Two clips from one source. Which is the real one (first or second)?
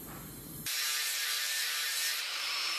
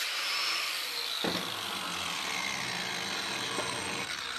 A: second